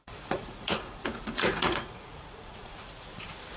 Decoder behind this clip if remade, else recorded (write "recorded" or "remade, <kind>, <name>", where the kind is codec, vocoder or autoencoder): remade, vocoder, Vocos